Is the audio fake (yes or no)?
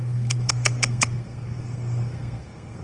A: yes